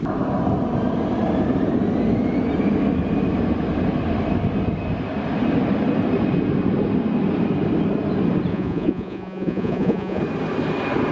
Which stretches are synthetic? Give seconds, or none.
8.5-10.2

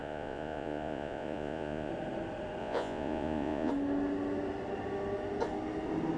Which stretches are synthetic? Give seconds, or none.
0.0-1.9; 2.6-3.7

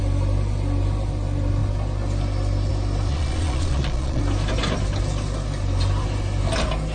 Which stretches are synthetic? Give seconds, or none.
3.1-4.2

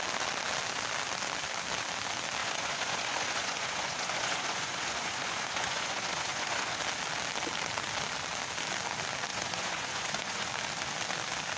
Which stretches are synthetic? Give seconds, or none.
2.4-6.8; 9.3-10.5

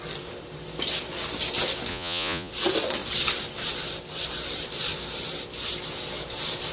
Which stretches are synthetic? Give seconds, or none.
1.9-2.5

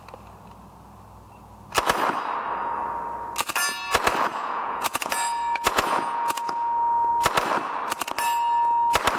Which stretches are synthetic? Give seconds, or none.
4.3-7.1

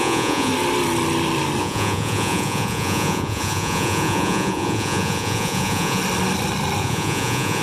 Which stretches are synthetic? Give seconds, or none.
0.0-0.5; 1.6-6.0; 6.8-7.6

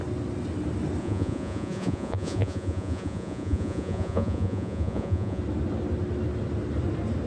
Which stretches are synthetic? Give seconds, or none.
1.0-5.4